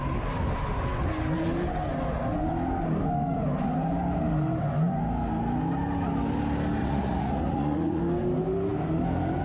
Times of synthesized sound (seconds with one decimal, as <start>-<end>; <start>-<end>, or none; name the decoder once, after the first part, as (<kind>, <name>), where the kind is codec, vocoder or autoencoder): 6.8-8.0 (vocoder, Vocos)